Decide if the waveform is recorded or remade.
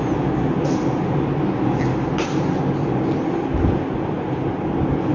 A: recorded